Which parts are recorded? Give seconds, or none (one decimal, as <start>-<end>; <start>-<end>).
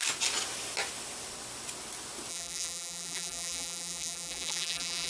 0.0-2.3